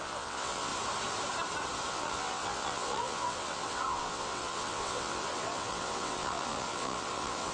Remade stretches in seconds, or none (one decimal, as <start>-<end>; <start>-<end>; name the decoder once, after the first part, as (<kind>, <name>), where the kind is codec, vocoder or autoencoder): 0.0-0.7 (vocoder, WaveNeXt); 1.9-7.5